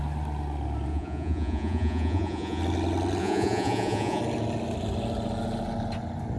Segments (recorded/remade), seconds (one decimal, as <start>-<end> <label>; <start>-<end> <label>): 0.0-0.9 recorded; 0.9-2.6 remade; 2.6-3.2 recorded; 3.2-4.2 remade; 4.2-6.4 recorded